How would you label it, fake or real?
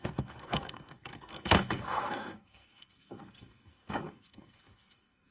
fake